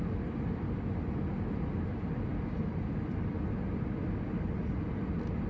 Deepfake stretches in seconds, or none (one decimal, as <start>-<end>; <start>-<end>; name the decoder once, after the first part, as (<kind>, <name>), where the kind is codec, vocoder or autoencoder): none